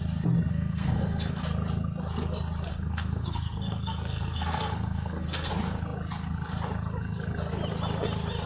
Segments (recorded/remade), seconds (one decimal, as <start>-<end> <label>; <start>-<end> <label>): 0.0-0.5 recorded; 0.5-1.4 remade; 1.4-2.7 recorded; 2.7-5.5 remade; 5.5-8.5 recorded